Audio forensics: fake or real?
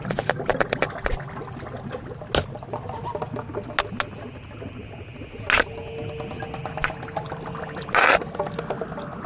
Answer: real